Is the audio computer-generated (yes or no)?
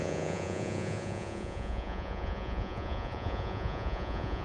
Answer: yes